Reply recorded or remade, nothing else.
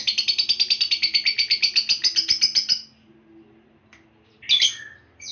recorded